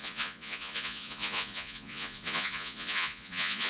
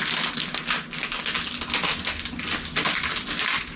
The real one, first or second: second